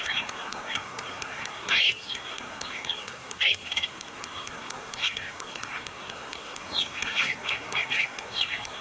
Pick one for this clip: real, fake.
fake